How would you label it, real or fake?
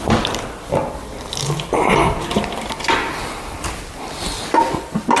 real